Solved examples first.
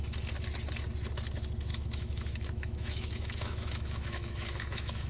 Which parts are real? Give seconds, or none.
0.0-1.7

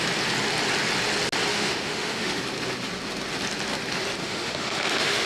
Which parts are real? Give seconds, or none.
0.0-1.5; 2.4-4.2

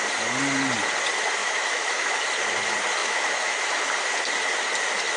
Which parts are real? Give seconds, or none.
0.0-1.4; 2.2-3.0; 3.8-5.2

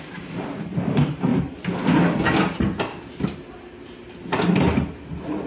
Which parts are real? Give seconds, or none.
0.0-5.5

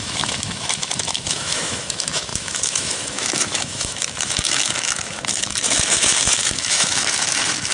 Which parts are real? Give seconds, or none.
none

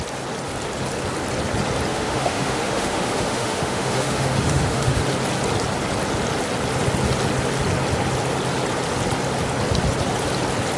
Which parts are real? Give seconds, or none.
0.0-1.9; 5.0-10.8

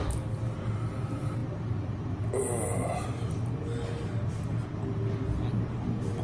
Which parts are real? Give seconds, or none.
0.0-6.2

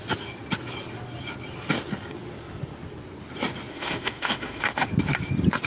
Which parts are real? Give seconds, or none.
0.0-3.7; 4.9-5.7